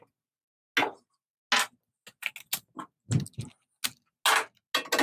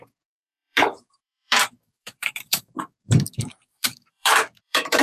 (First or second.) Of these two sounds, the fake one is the second